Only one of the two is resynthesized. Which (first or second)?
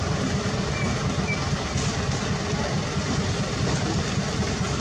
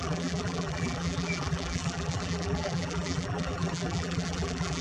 second